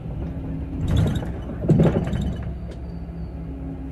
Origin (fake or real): real